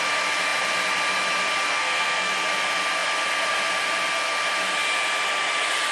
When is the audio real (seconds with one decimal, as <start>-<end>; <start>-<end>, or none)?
0.0-1.7; 2.3-5.9